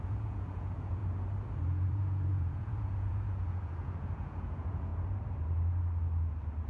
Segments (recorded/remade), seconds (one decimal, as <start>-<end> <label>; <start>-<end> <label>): 0.0-1.0 remade; 1.0-1.7 recorded; 1.7-4.9 remade; 4.9-6.7 recorded